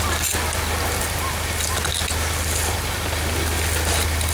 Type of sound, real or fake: real